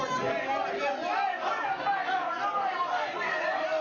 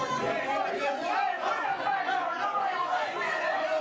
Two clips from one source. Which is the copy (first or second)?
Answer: second